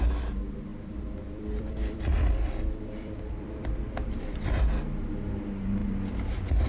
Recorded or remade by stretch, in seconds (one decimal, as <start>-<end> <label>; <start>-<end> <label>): 0.0-0.7 recorded; 0.7-4.7 remade; 4.7-5.8 recorded; 5.8-6.7 remade